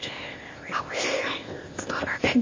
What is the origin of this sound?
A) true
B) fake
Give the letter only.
B